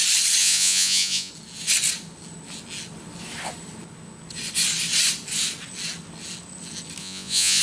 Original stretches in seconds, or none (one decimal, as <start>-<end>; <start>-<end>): 0.0-0.4; 1.3-7.0